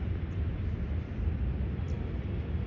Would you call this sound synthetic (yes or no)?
yes